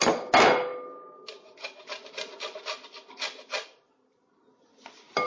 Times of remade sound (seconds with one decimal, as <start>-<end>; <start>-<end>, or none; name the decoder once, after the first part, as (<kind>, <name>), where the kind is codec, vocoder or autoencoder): none